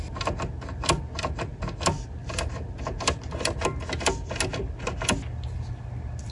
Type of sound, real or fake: real